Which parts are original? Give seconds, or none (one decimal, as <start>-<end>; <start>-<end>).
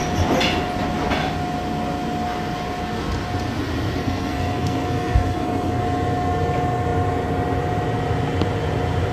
0.0-4.0; 5.8-9.1